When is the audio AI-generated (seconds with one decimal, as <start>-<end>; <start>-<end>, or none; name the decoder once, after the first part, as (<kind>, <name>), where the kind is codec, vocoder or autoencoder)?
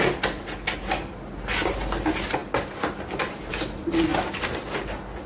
none